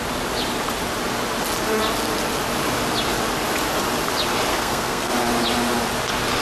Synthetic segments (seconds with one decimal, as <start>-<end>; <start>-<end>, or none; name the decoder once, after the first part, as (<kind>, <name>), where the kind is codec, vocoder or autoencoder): 4.5-5.1 (codec, SNAC)